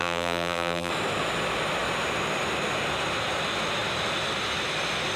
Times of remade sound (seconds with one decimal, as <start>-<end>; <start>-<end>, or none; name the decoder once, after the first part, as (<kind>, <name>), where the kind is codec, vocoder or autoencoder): 0.0-0.9 (vocoder, BigVGAN v2)